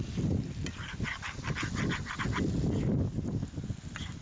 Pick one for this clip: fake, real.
real